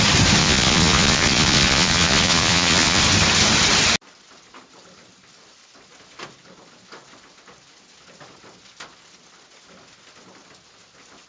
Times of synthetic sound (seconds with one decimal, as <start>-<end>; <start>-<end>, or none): 0.4-3.0